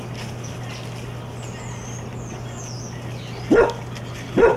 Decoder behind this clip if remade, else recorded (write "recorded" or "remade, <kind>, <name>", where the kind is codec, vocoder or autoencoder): recorded